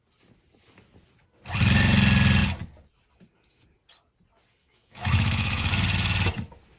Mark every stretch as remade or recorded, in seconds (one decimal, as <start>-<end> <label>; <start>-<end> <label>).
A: 0.0-4.6 recorded; 4.6-5.7 remade; 5.7-6.8 recorded